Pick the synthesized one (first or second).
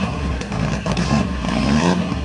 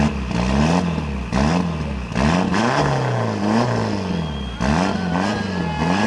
first